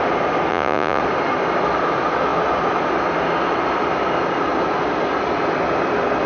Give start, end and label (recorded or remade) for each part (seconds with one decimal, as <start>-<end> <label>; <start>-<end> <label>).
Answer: 0.0-0.5 recorded; 0.5-1.0 remade; 1.0-6.3 recorded